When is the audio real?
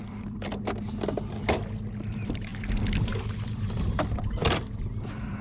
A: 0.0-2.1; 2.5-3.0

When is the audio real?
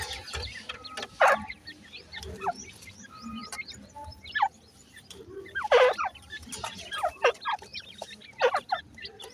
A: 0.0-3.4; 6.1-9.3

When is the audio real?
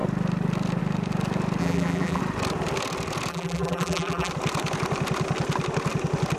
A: 0.0-1.6; 2.2-3.3; 4.3-6.4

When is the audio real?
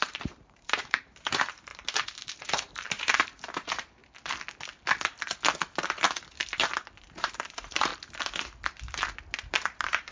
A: 1.7-2.4; 4.0-7.0; 7.9-9.5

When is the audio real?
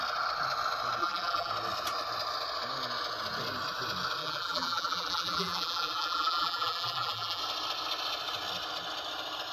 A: 0.0-1.0; 1.5-4.2; 7.4-9.5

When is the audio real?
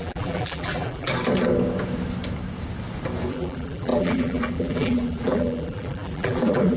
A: 1.1-3.3